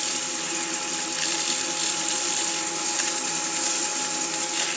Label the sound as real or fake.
real